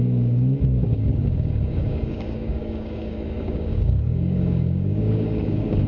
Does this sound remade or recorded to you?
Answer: remade